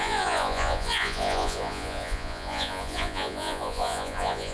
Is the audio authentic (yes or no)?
no